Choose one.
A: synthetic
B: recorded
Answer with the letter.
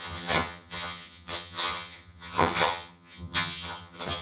A